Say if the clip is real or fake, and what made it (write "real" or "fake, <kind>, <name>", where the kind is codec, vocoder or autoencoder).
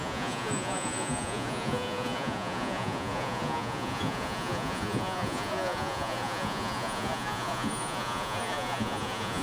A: fake, vocoder, Vocos